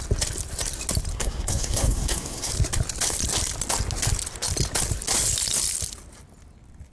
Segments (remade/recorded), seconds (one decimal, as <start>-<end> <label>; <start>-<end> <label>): 0.0-1.1 recorded; 1.1-2.5 remade; 2.5-6.9 recorded